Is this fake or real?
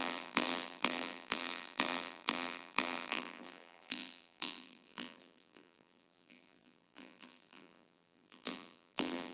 fake